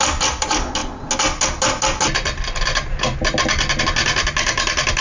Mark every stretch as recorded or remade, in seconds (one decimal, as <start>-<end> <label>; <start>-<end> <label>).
0.0-5.0 recorded